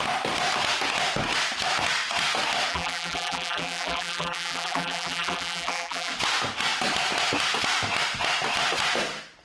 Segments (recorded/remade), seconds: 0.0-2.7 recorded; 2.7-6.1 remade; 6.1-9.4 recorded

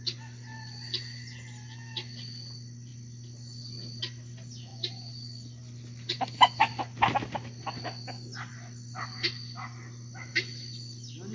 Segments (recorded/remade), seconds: 0.0-11.3 recorded

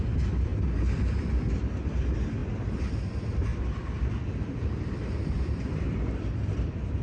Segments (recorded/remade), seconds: 0.0-0.5 remade; 0.5-1.5 recorded; 1.5-2.4 remade; 2.4-2.9 recorded; 2.9-3.5 remade; 3.5-4.0 recorded; 4.0-7.0 remade

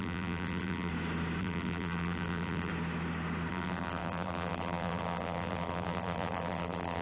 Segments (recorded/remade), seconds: 0.0-0.9 remade; 0.9-1.4 recorded; 1.4-2.7 remade; 2.7-3.5 recorded; 3.5-7.0 remade

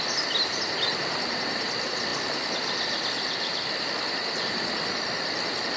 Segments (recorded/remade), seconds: 0.0-5.8 recorded